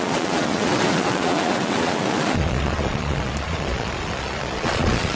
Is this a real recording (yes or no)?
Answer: no